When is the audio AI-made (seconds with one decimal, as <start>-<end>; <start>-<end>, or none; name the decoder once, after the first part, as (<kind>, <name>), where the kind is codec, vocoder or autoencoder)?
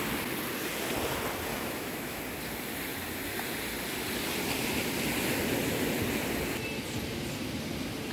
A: 1.5-2.2 (autoencoder, DAC-VAE)